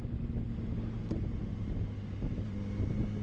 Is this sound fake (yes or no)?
no